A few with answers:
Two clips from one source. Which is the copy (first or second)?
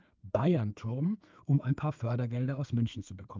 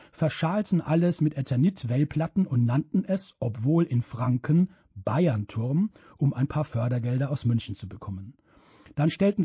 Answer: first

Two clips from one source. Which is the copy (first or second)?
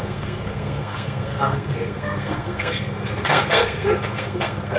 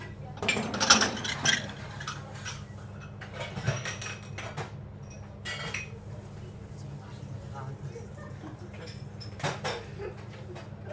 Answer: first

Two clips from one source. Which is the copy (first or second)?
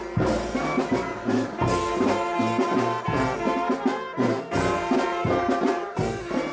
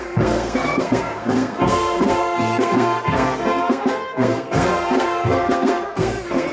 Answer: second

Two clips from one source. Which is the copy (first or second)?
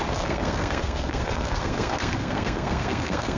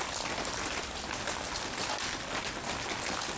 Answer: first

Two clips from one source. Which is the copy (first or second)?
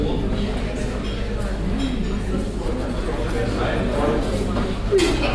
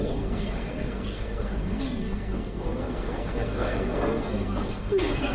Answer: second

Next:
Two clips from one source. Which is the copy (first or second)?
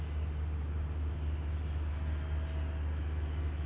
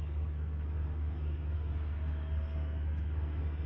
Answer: second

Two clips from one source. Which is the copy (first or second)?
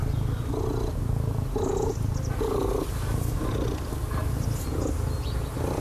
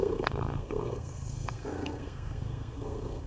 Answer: second